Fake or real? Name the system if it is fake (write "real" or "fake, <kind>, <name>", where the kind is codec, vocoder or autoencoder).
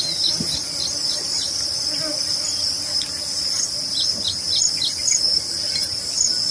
real